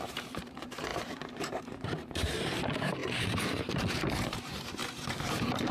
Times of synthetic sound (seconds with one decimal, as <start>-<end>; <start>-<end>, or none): 0.0-4.8; 5.3-5.7